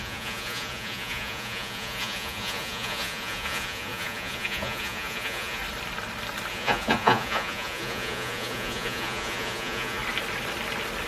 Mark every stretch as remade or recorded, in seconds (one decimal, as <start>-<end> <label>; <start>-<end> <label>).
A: 0.0-5.6 remade; 5.6-6.5 recorded; 6.5-10.0 remade; 10.0-11.1 recorded